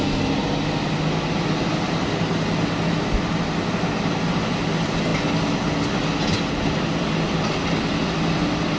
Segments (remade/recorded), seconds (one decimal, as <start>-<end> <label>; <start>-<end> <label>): 0.0-8.8 recorded

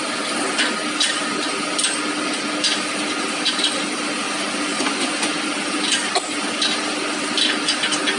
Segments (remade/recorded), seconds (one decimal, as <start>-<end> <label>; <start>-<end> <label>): 0.0-4.7 recorded; 4.7-5.3 remade; 5.3-8.2 recorded

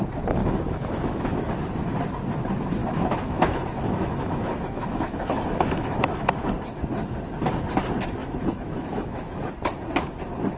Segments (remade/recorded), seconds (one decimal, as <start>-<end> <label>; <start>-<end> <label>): 0.0-0.4 recorded; 0.4-1.5 remade; 1.5-2.8 recorded; 2.8-6.5 remade; 6.5-8.2 recorded; 8.2-9.4 remade; 9.4-10.6 recorded

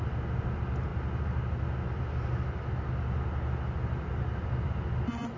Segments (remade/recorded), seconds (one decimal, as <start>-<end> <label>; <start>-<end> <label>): 0.0-5.4 recorded

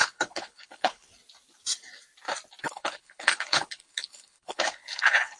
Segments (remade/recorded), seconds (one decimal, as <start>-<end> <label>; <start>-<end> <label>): 0.0-1.1 remade; 1.1-2.6 recorded; 2.6-5.4 remade

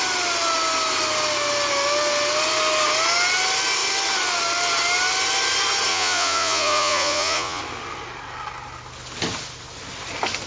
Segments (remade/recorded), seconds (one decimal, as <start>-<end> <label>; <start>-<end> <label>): 0.0-5.9 recorded; 5.9-7.6 remade; 7.6-10.5 recorded